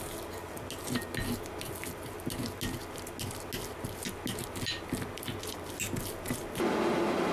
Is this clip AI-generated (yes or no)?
no